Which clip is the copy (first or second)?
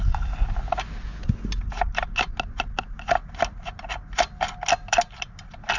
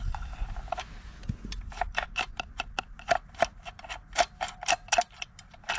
second